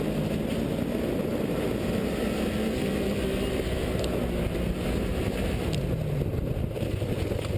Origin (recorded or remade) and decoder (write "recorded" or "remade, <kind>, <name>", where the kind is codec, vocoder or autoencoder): recorded